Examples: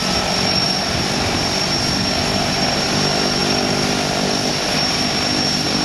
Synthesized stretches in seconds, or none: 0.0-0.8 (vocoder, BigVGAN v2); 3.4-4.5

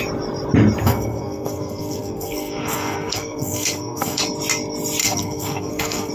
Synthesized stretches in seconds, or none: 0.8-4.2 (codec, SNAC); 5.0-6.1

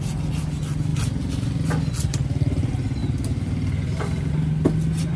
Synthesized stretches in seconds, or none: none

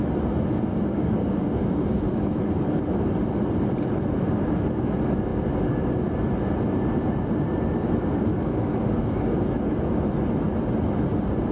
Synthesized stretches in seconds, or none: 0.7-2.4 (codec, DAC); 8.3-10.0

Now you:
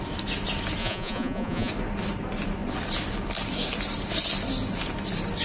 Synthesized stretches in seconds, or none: 0.8-1.7 (vocoder, Vocos)